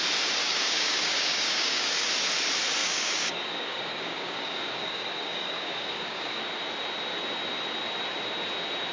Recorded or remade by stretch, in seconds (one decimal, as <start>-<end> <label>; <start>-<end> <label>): 0.0-0.4 recorded; 0.4-2.1 remade; 2.1-2.8 recorded; 2.8-6.4 remade; 6.4-8.9 recorded